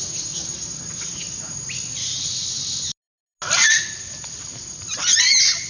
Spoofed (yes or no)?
no